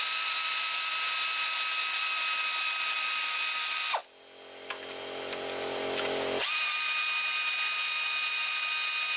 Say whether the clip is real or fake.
real